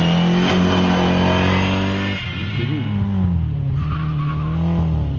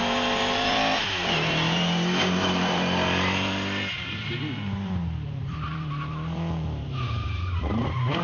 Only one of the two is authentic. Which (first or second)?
first